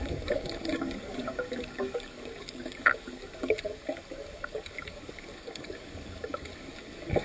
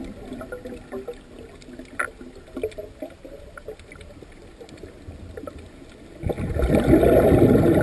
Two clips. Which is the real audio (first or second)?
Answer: second